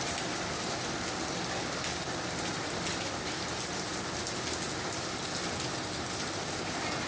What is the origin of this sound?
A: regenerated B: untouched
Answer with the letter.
B